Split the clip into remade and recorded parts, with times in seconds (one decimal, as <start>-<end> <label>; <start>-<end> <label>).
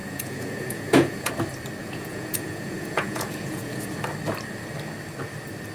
0.0-1.3 remade; 1.3-1.8 recorded; 1.8-3.8 remade; 3.8-5.7 recorded